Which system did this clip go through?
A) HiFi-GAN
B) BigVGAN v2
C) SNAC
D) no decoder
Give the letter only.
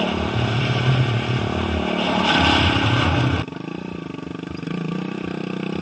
D